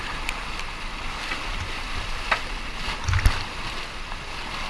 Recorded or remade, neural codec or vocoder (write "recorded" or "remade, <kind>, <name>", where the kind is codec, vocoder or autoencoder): recorded